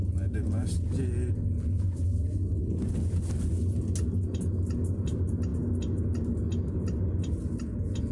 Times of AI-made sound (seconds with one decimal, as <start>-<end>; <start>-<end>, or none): none